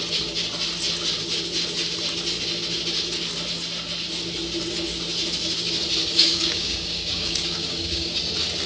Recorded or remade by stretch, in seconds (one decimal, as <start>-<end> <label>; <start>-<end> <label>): 0.0-6.0 recorded; 6.0-8.2 remade; 8.2-8.7 recorded